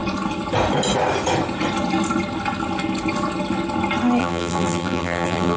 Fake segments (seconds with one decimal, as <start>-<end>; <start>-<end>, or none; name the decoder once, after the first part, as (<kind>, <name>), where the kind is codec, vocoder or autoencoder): 4.2-5.6 (vocoder, BigVGAN v2)